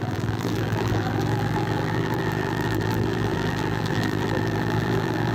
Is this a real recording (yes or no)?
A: no